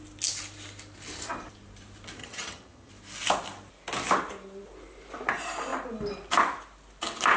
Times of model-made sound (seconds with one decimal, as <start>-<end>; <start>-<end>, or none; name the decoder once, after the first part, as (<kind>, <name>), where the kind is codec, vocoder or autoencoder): 2.2-2.9 (vocoder, HiFi-GAN)